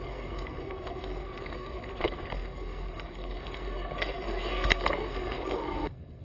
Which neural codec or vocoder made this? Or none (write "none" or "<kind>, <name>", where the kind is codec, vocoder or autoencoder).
codec, SNAC